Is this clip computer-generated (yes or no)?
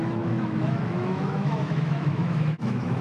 yes